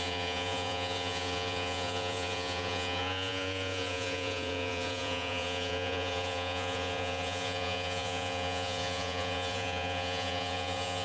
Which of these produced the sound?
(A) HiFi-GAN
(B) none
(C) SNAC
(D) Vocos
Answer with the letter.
D